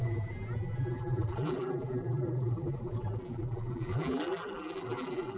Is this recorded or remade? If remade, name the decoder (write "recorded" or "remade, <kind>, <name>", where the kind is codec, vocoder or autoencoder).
remade, vocoder, BigVGAN v2